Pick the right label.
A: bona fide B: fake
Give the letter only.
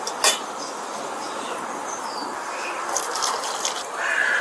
A